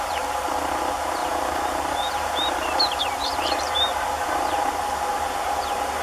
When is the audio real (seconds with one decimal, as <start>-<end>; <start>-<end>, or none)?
0.0-1.2; 4.8-6.0